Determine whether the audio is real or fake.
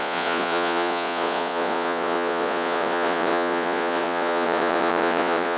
fake